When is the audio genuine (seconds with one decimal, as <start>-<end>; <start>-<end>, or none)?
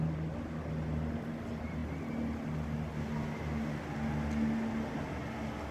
0.0-5.7